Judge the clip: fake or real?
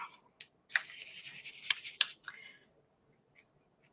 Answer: real